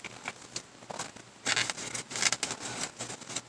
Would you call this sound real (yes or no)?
yes